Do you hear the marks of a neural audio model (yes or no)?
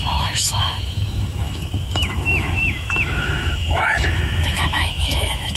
yes